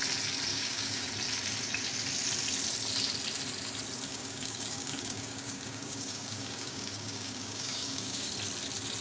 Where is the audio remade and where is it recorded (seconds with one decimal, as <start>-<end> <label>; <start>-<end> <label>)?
0.0-0.5 recorded; 0.5-1.1 remade; 1.1-4.1 recorded; 4.1-8.3 remade; 8.3-9.0 recorded